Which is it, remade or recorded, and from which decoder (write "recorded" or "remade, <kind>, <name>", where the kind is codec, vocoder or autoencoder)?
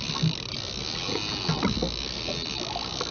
recorded